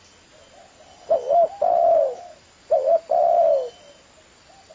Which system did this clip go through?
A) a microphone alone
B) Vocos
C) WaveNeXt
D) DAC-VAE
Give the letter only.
A